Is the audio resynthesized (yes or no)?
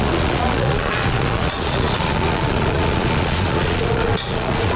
yes